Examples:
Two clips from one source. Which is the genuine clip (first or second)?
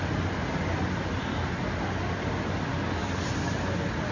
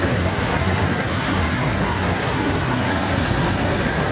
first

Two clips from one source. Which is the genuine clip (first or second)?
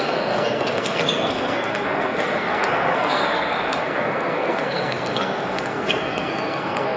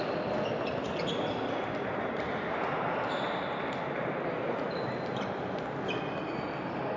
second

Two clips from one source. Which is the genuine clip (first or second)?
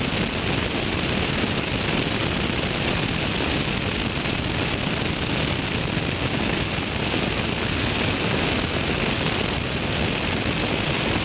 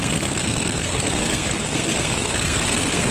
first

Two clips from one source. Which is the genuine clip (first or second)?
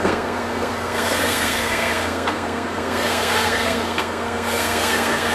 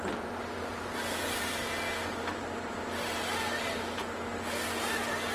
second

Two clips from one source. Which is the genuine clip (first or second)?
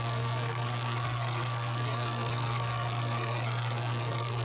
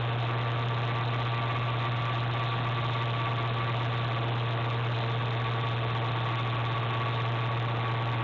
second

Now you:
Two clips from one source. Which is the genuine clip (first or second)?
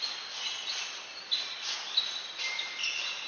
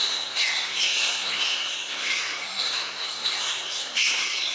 first